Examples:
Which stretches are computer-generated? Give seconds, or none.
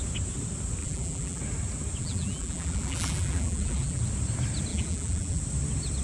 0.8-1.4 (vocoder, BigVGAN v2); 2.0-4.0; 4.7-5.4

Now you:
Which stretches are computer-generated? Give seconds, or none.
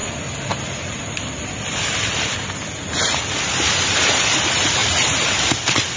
4.8-5.5 (vocoder, BigVGAN v2)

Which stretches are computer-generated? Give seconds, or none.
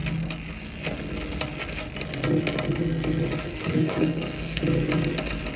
3.5-4.6 (codec, SNAC)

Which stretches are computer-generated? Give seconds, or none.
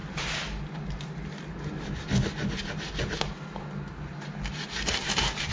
none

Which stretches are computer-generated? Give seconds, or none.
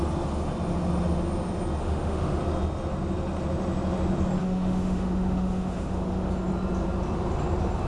1.8-2.4 (autoencoder, DAC-VAE); 4.4-6.3